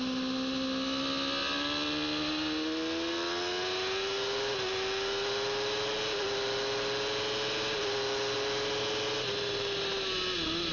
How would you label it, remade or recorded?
recorded